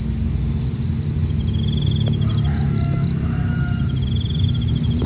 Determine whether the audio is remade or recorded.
recorded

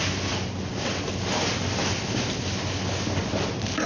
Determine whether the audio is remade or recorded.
recorded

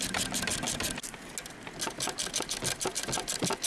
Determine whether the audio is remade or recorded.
recorded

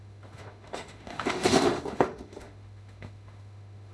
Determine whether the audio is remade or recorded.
remade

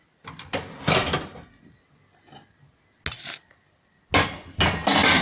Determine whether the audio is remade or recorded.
recorded